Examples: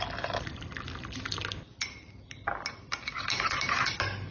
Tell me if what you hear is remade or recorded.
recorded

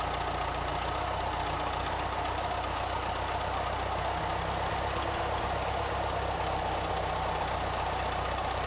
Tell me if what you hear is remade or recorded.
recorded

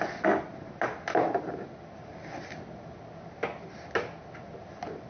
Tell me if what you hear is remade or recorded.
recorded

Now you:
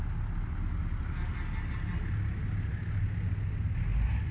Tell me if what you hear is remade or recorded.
recorded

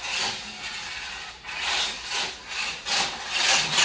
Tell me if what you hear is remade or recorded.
recorded